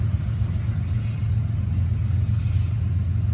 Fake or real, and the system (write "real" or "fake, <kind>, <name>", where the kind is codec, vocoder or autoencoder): real